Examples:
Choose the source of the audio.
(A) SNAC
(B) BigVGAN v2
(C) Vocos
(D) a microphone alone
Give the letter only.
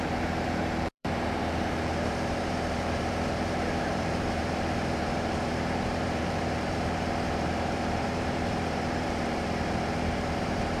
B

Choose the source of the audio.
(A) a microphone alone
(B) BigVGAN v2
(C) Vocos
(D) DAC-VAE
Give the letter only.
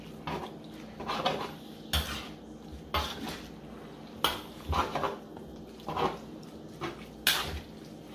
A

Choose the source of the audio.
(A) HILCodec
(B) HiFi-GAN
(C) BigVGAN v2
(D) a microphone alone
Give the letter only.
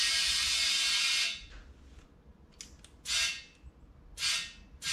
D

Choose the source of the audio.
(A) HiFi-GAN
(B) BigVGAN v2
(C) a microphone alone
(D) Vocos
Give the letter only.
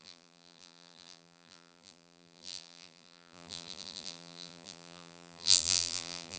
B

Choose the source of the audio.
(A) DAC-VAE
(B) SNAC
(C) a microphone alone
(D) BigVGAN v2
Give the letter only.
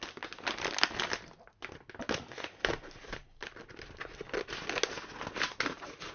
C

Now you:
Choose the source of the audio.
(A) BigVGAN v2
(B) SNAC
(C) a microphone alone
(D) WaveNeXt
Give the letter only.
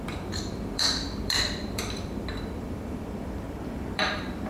A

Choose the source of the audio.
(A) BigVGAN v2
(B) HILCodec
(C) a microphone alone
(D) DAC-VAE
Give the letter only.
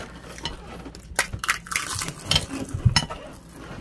C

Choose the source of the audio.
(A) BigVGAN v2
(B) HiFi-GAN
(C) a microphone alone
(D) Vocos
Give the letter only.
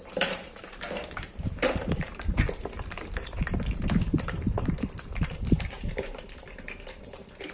A